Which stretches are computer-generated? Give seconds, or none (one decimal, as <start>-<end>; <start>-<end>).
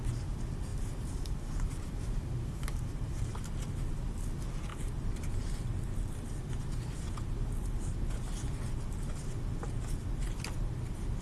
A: 0.7-3.4; 4.7-5.5